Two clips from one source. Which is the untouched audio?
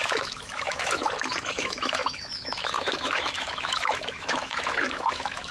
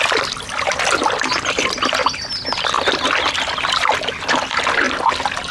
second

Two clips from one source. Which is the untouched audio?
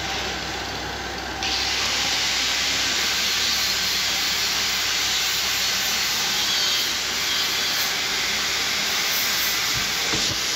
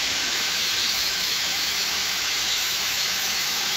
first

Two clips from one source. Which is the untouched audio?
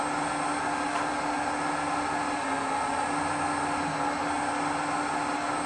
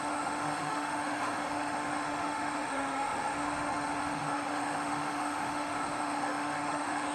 first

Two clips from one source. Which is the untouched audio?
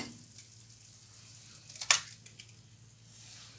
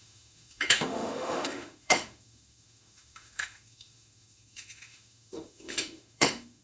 first